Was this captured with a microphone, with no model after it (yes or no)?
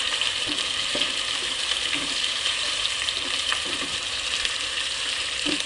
no